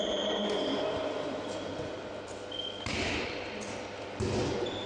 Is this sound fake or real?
real